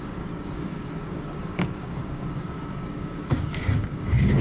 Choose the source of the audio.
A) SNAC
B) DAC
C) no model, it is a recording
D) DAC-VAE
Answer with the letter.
B